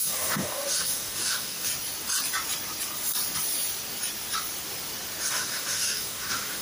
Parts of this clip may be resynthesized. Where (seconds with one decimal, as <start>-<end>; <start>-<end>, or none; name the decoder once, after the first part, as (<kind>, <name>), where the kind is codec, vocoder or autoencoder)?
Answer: 0.0-1.7 (codec, DAC); 5.3-6.6